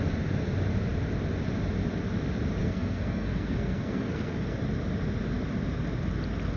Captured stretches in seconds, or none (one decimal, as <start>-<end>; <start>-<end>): 0.0-2.6; 4.6-6.6